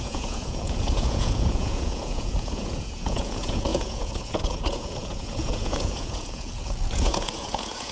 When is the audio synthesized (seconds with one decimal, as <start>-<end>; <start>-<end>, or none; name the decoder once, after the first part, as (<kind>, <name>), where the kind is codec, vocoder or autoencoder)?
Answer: 0.0-7.9 (vocoder, Vocos)